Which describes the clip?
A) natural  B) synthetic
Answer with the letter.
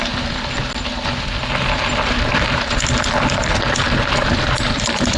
A